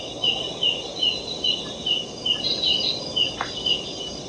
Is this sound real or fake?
real